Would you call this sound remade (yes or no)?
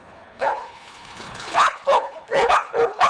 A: yes